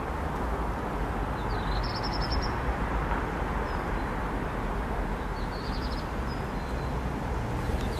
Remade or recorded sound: recorded